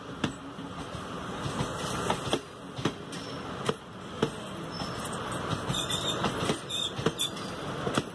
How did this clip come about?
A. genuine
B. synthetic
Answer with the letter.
A